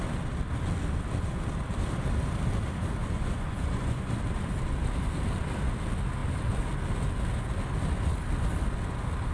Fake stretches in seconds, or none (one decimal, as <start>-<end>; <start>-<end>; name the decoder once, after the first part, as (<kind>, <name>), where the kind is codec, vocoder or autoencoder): 3.0-4.1 (vocoder, Vocos)